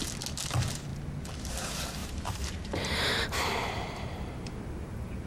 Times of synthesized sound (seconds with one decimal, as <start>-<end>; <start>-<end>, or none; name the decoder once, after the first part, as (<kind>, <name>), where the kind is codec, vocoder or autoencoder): 2.0-5.3 (vocoder, BigVGAN v2)